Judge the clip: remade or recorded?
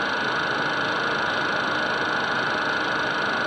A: recorded